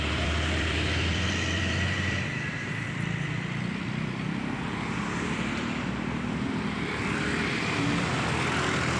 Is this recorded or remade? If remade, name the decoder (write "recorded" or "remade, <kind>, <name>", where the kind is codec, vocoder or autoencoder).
remade, vocoder, BigVGAN v2